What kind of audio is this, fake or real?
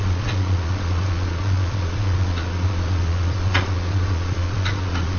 fake